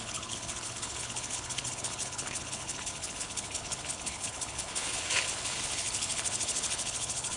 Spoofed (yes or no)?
yes